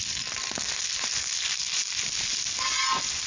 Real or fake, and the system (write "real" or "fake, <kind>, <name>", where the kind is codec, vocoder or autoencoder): real